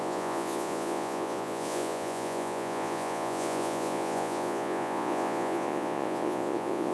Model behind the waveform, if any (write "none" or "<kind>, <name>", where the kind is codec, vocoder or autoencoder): vocoder, Vocos